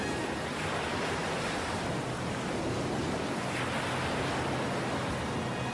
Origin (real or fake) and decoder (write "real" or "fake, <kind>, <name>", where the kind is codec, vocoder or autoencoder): real